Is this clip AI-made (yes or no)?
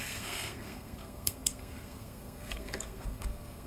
yes